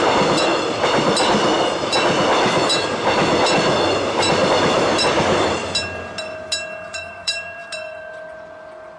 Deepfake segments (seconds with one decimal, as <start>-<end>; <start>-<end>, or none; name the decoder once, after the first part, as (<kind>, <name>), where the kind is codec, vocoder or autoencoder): 0.0-0.5 (vocoder, BigVGAN v2); 4.3-5.6; 6.9-7.6